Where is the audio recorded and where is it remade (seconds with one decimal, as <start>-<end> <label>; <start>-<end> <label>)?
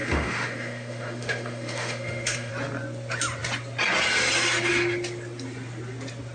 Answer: 0.0-2.5 remade; 2.5-6.3 recorded